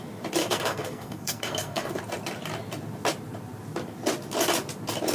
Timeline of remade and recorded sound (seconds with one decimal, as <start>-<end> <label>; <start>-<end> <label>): 0.0-0.4 recorded; 0.4-2.0 remade; 2.0-5.1 recorded